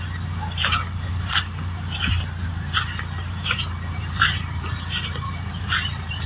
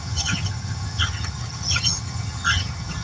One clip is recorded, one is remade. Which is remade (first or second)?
second